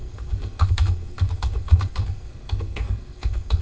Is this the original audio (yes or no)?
no